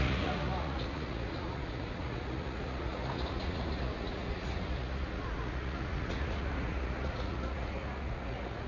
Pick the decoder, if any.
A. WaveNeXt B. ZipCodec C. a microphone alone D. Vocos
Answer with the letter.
D